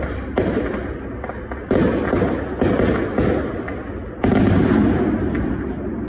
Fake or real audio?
real